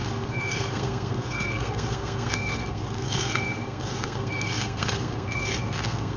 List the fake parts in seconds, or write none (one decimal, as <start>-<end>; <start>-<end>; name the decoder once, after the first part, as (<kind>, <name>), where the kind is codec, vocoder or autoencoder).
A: 0.0-6.2 (codec, SNAC)